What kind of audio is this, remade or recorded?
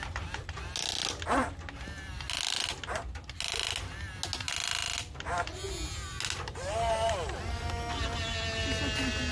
recorded